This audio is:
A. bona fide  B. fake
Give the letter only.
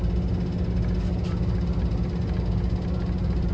A